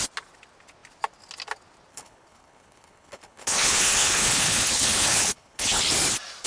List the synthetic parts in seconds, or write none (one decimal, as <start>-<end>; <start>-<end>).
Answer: 1.9-5.8